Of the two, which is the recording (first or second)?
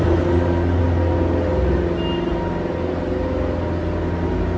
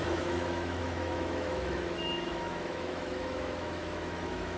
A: first